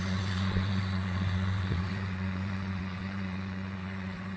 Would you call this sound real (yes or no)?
no